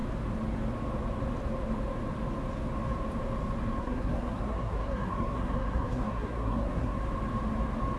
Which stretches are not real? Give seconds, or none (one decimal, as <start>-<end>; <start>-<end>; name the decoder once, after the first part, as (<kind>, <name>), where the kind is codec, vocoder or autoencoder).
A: 3.8-7.0 (codec, SNAC)